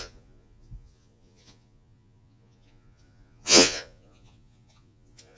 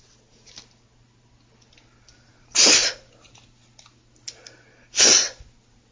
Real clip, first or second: second